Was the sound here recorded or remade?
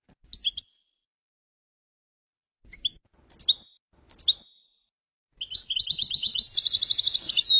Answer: recorded